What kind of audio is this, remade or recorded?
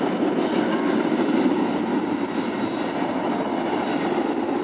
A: remade